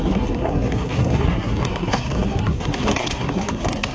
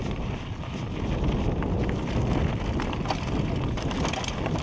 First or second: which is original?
second